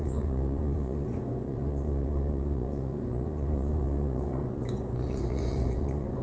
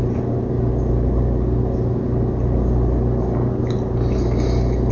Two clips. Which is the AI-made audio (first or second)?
first